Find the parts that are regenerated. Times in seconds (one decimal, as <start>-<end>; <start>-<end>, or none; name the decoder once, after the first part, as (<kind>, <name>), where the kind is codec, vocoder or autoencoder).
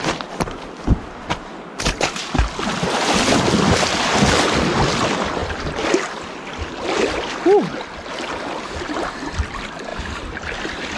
none